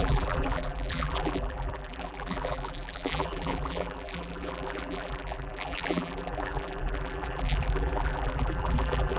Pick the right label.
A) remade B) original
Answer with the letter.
A